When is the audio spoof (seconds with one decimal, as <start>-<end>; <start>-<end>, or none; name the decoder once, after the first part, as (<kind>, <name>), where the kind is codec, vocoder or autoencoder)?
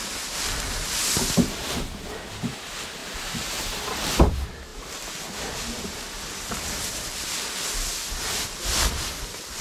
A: 3.0-3.6 (vocoder, BigVGAN v2)